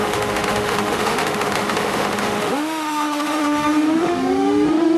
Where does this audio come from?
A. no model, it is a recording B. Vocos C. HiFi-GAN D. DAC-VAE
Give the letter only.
D